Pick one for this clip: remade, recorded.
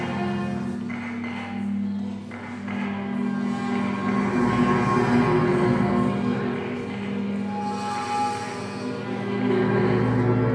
recorded